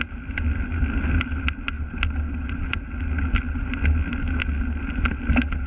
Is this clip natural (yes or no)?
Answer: yes